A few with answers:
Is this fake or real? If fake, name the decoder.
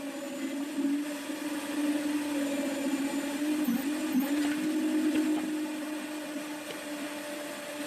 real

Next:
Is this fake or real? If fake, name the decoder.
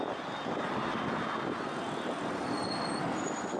real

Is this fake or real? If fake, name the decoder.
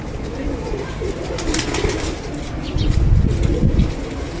real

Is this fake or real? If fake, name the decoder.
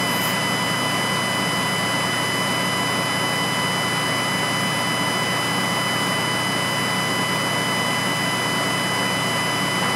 real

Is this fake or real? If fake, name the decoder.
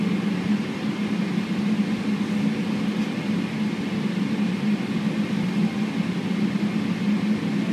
real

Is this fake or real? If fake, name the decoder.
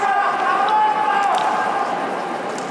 real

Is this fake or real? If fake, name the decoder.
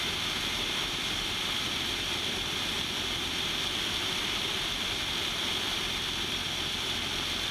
fake, vocoder, BigVGAN v2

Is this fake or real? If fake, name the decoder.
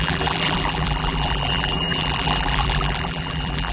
fake, vocoder, BigVGAN v2